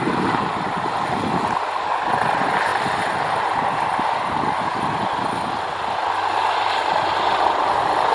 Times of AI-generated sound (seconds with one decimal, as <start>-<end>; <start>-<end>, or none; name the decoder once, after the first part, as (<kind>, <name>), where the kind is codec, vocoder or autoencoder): none